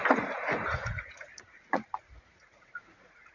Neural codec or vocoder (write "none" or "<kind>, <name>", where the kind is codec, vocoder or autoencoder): vocoder, Vocos